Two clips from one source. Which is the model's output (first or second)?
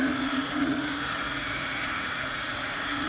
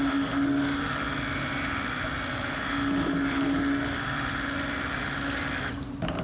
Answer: first